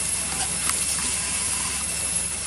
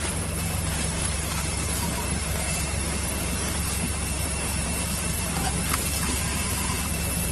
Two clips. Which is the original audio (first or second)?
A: first